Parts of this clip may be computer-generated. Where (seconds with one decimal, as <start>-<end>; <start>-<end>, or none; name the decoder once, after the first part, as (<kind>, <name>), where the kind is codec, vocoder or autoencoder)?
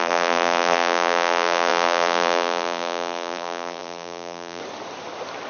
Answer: 0.0-4.6 (vocoder, BigVGAN v2)